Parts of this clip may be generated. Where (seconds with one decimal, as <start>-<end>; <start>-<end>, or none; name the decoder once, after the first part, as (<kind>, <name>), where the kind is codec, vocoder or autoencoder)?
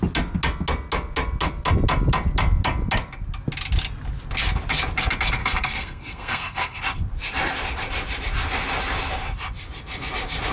5.4-6.8 (codec, SNAC)